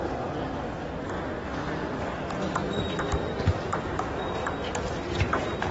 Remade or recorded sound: recorded